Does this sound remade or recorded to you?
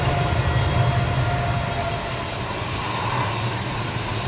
recorded